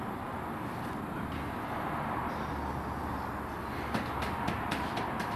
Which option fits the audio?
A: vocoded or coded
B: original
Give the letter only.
B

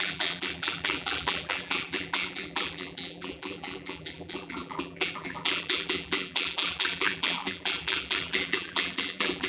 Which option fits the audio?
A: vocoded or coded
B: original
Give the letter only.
A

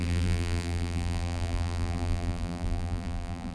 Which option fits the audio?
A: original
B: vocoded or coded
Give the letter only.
B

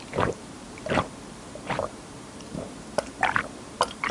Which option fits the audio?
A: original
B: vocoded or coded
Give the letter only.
B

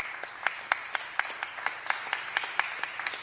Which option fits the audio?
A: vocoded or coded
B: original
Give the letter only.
B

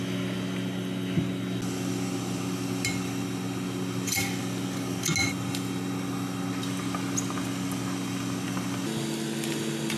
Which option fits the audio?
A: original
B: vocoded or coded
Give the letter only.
A